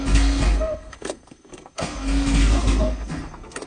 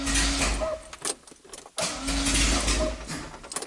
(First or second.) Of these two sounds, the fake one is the first